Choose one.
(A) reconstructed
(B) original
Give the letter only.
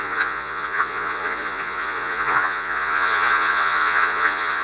A